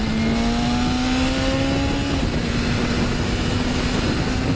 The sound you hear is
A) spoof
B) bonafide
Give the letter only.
B